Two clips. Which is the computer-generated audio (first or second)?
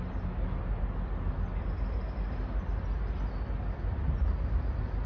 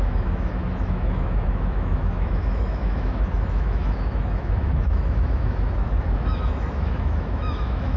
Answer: second